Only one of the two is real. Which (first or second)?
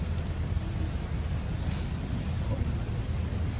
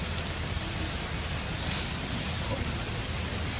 first